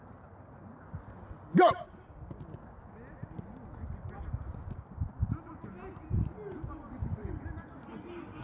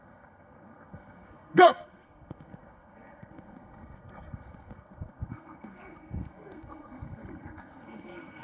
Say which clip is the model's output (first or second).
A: second